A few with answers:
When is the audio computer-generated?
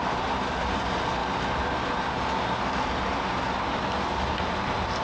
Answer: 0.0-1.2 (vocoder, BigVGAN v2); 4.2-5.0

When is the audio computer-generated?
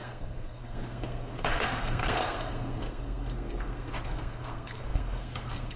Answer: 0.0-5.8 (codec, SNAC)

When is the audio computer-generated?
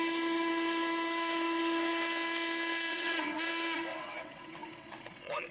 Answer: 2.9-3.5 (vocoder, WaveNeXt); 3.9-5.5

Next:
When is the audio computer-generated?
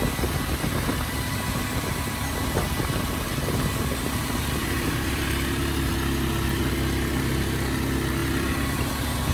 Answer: 4.2-5.9 (vocoder, BigVGAN v2)